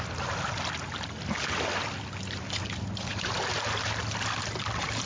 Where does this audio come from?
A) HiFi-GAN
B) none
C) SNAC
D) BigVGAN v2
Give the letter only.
B